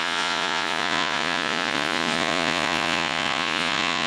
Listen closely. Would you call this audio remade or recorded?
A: remade